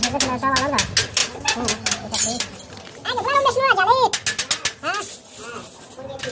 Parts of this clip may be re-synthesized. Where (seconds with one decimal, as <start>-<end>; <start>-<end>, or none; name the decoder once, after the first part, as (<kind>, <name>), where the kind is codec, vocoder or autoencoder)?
none